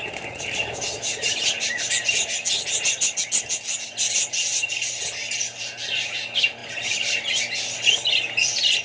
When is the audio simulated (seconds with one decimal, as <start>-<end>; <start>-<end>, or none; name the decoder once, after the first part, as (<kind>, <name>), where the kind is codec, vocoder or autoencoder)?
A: none